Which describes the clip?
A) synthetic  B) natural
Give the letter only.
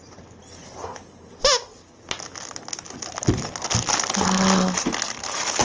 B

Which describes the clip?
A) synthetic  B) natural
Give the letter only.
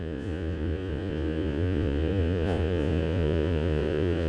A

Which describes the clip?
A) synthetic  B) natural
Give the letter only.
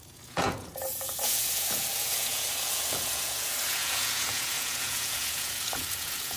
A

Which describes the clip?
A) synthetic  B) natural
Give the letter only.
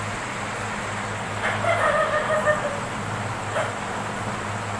B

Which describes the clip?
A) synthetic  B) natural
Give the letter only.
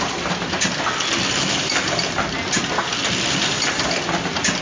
B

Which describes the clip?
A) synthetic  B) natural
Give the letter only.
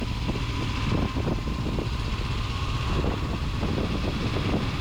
B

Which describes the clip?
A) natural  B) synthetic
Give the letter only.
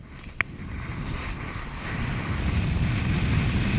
A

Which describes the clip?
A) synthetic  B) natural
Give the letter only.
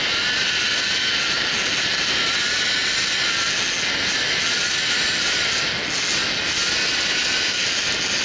B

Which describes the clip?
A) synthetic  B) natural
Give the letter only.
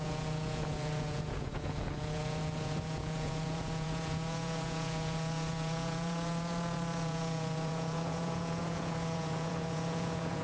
A